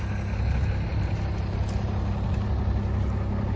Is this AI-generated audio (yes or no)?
no